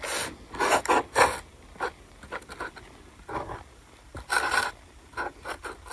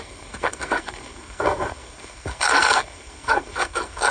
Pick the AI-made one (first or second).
second